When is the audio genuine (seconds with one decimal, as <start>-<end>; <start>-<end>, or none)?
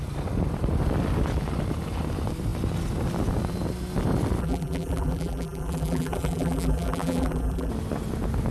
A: 0.0-4.4; 7.7-8.5